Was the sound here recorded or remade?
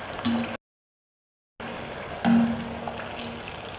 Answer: recorded